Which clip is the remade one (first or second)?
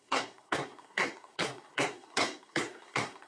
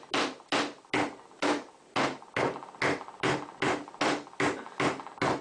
first